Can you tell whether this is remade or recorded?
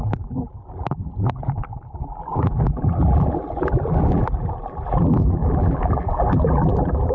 remade